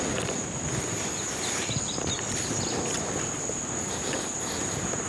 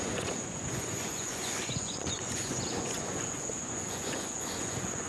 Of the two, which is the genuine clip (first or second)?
first